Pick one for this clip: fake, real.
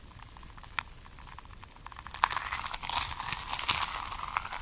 real